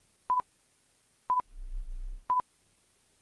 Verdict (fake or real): real